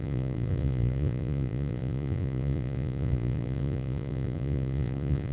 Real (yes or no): no